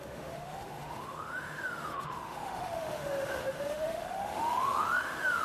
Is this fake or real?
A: fake